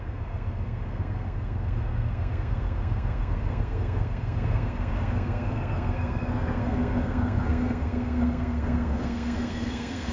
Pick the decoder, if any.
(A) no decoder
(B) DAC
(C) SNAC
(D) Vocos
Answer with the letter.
C